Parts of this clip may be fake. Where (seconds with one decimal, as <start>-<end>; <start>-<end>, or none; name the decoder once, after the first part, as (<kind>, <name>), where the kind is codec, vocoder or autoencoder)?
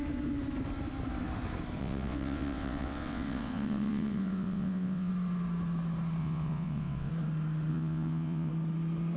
1.8-5.1 (vocoder, WaveNeXt); 6.2-7.1; 7.7-8.5